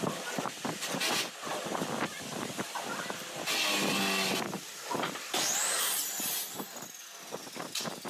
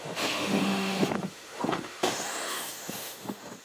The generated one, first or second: second